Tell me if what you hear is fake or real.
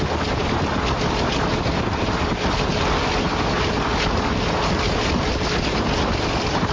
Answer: real